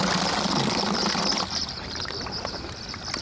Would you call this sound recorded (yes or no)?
yes